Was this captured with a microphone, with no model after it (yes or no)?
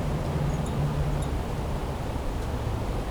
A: no